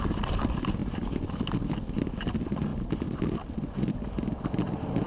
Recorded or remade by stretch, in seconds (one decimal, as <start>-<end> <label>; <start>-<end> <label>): 0.0-5.1 recorded